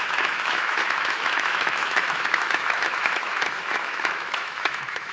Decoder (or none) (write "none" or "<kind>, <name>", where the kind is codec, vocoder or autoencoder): autoencoder, DAC-VAE